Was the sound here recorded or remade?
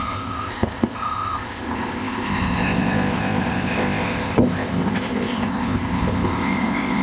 remade